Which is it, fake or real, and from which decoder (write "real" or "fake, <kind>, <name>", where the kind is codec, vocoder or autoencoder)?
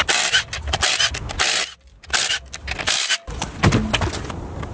real